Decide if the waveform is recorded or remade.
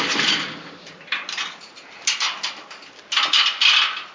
recorded